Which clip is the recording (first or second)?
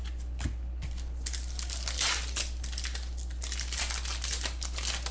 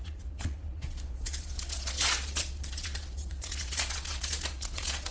first